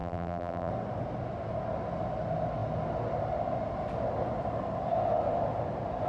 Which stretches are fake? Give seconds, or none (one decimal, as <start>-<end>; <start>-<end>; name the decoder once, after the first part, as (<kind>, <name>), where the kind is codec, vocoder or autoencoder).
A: 0.0-0.7 (vocoder, BigVGAN v2)